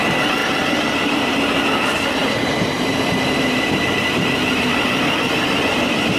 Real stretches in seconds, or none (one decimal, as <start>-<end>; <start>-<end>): 0.0-2.2; 5.3-6.2